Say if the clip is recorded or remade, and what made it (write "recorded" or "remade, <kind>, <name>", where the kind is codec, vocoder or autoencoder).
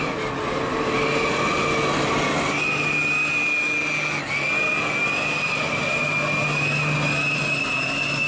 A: recorded